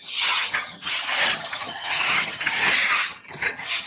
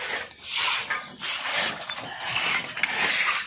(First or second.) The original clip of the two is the second